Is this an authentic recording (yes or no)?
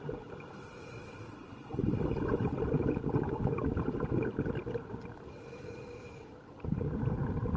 no